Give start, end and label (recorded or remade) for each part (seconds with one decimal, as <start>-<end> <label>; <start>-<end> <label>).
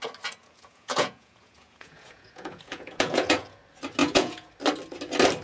0.0-0.4 recorded; 0.4-3.6 remade; 3.6-4.0 recorded; 4.0-4.5 remade; 4.5-5.4 recorded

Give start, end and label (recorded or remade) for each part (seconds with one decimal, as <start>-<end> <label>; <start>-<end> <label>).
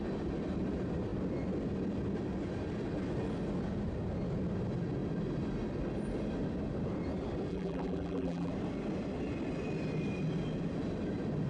0.0-7.5 recorded; 7.5-8.5 remade; 8.5-11.5 recorded